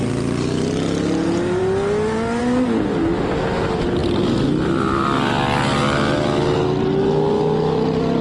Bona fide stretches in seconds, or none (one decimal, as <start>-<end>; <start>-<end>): 0.0-8.2